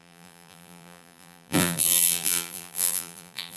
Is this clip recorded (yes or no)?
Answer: no